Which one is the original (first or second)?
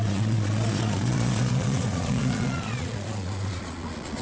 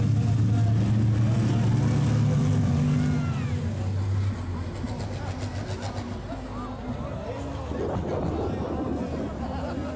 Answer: second